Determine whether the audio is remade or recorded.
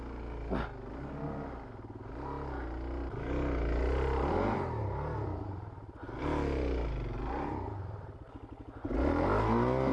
recorded